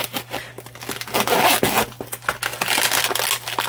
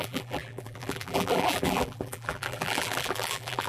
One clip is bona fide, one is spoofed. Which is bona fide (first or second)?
first